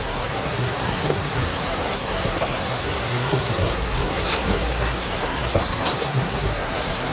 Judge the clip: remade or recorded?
remade